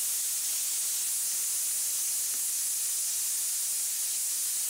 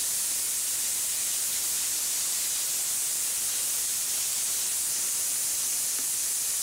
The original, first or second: first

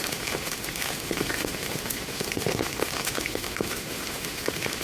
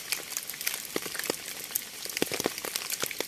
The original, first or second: second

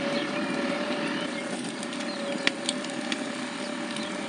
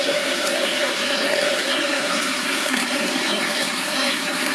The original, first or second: first